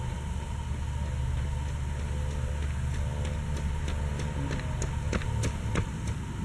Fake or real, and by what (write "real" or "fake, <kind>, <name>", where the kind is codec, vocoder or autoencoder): real